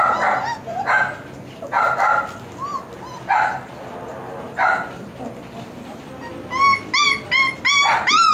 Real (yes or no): yes